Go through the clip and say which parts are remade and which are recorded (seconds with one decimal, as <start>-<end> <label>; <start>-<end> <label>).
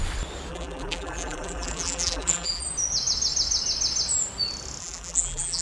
0.0-0.5 recorded; 0.5-2.6 remade; 2.6-4.8 recorded; 4.8-5.6 remade